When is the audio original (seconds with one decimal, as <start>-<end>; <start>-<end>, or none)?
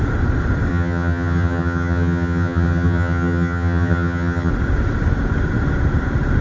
0.0-0.7; 4.5-6.4